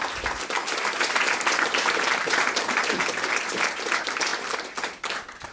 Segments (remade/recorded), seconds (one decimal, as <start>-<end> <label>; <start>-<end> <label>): 0.0-0.6 remade; 0.6-1.1 recorded; 1.1-5.5 remade